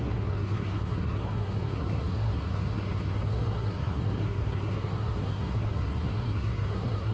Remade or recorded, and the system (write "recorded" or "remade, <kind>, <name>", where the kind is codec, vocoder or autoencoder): remade, codec, SNAC